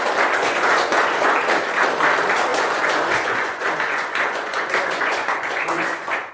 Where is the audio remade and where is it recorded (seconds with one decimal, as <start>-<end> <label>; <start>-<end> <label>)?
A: 0.0-0.4 recorded; 0.4-1.4 remade; 1.4-2.5 recorded; 2.5-6.3 remade